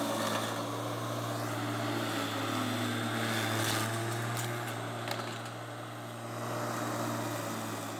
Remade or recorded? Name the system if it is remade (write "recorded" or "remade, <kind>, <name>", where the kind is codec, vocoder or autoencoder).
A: recorded